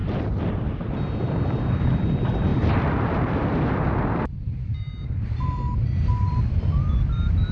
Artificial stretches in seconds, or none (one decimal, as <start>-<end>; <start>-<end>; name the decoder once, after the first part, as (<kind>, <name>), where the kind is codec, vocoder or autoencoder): 1.3-7.5 (vocoder, BigVGAN v2)